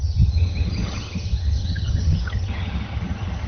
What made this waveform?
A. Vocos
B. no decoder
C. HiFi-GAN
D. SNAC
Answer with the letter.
C